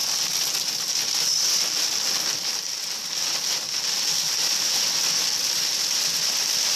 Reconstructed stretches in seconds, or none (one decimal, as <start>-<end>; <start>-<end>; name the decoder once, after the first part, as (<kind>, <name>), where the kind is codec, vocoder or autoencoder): none

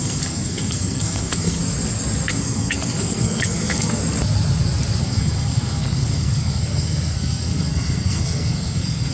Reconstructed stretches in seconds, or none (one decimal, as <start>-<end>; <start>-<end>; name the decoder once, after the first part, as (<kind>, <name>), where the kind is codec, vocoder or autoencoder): 0.0-1.6 (codec, SNAC); 2.3-4.0; 5.0-9.1

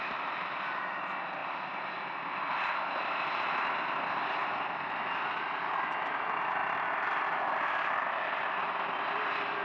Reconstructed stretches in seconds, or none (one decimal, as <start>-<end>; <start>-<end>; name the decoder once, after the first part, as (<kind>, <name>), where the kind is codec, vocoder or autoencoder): 6.6-8.7 (vocoder, BigVGAN v2)

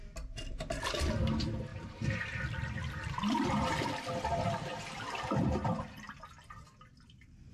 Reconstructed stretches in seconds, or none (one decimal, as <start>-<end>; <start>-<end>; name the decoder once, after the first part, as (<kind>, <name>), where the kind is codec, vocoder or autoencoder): none

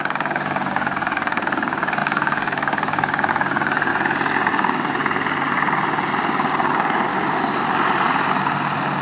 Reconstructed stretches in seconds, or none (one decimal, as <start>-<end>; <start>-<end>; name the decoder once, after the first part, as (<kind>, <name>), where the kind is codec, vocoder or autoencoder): 0.0-3.9 (codec, DAC); 4.5-5.0; 6.5-7.1

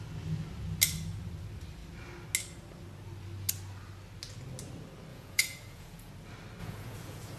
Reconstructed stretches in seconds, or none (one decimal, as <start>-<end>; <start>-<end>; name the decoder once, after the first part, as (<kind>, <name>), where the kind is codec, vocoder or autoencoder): 5.1-6.1 (vocoder, Vocos); 6.6-7.4

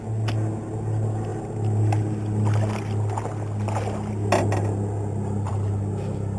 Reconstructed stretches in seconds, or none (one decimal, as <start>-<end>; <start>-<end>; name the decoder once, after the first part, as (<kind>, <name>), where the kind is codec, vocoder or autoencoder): none

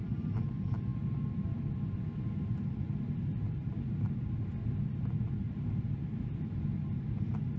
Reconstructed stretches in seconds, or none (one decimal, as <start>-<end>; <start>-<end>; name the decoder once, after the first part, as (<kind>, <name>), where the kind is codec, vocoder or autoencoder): none